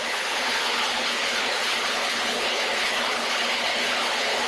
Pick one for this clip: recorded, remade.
remade